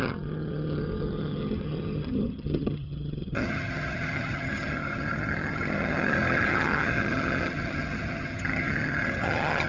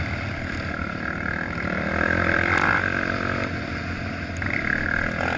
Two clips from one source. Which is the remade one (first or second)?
first